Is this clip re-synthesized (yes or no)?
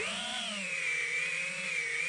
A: yes